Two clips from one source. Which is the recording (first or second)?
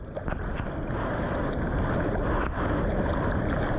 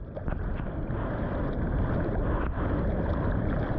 first